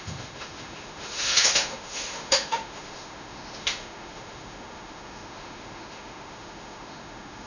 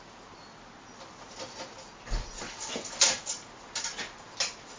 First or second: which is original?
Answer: second